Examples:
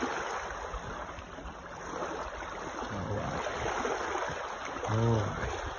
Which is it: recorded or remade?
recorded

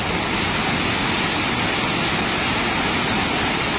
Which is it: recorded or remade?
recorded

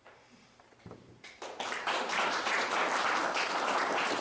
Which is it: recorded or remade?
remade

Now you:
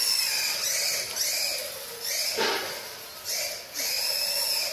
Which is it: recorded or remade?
recorded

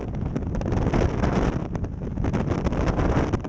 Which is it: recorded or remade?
recorded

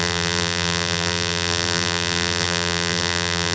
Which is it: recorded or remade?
remade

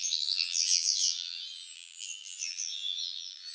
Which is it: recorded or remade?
remade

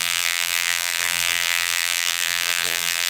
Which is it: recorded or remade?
remade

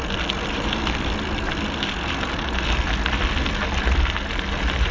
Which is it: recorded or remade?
recorded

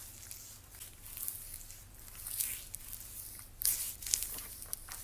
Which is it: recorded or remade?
recorded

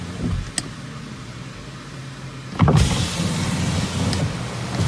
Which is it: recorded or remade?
recorded